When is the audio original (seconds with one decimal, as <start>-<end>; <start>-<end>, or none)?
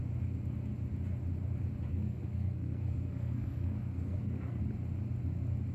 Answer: 0.0-1.9; 4.6-5.7